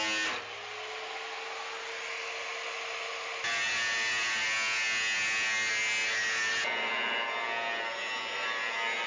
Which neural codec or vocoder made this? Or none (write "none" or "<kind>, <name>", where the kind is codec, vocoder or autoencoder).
none